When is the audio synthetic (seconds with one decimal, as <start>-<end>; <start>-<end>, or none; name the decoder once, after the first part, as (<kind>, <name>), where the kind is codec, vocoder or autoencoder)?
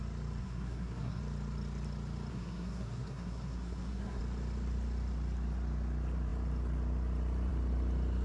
0.4-1.2 (codec, SNAC); 2.3-4.2